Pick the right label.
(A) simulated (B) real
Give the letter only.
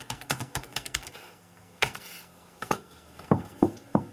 A